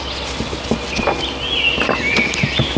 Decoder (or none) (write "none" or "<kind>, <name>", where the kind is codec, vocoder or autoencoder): none